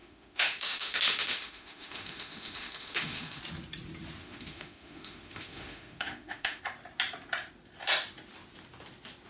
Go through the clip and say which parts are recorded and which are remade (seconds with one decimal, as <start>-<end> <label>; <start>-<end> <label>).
0.0-3.4 remade; 3.4-4.2 recorded; 4.2-6.6 remade; 6.6-9.3 recorded